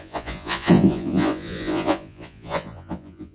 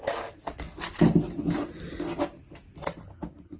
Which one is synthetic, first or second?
first